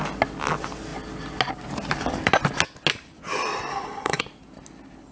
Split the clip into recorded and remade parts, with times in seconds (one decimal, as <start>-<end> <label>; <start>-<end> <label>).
0.0-3.7 recorded; 3.7-4.2 remade; 4.2-5.1 recorded